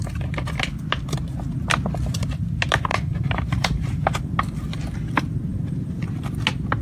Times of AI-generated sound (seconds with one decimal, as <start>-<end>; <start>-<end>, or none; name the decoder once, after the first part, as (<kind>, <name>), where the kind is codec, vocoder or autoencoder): 2.9-4.4 (vocoder, BigVGAN v2); 5.5-6.2